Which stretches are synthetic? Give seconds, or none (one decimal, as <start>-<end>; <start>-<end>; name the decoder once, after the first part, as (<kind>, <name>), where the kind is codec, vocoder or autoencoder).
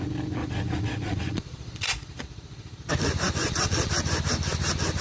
0.4-2.9 (vocoder, Vocos); 3.4-3.9